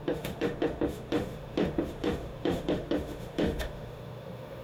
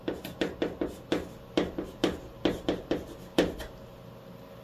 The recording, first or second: second